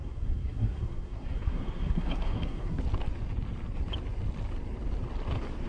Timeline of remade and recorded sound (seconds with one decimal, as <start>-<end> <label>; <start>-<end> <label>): 0.0-2.8 remade; 2.8-5.7 recorded